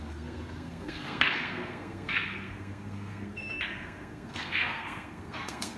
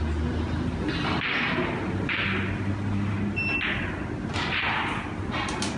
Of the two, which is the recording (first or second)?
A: second